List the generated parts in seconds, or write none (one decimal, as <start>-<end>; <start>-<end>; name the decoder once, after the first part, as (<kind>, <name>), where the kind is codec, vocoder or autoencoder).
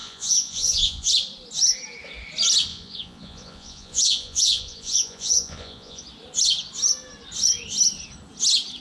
0.0-1.1 (vocoder, Vocos); 2.7-6.0